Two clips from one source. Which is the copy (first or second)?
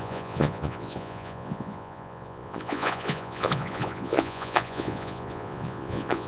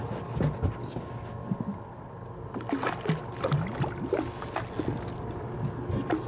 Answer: first